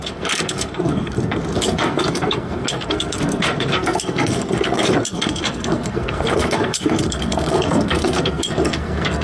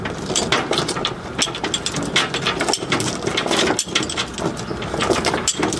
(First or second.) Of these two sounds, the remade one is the first